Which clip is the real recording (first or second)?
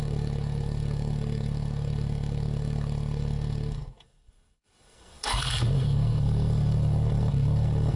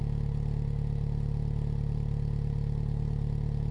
second